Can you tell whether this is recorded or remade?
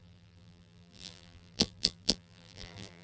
remade